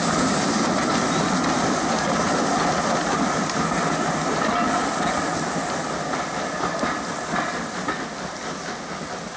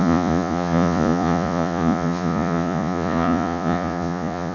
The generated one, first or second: second